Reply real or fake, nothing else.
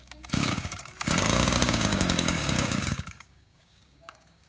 fake